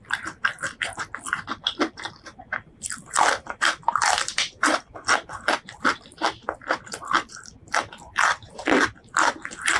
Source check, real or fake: fake